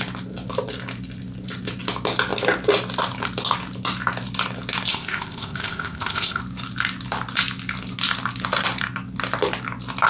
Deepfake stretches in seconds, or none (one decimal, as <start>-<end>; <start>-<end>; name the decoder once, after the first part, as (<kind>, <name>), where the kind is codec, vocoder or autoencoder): 4.9-6.4 (codec, ZipCodec)